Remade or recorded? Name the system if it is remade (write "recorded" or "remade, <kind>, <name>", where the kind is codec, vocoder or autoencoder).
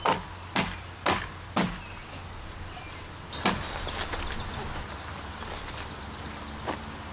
recorded